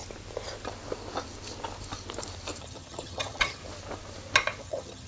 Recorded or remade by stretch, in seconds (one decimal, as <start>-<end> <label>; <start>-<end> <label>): 0.0-2.6 recorded; 2.6-3.6 remade; 3.6-4.6 recorded; 4.6-5.1 remade